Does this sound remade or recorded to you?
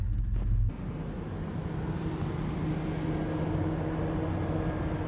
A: recorded